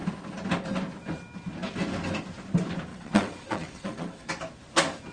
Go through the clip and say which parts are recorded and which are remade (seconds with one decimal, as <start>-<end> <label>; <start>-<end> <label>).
0.0-2.9 recorded; 2.9-4.3 remade; 4.3-5.1 recorded